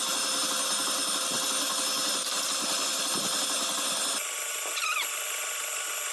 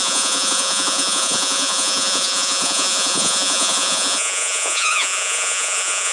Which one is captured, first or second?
first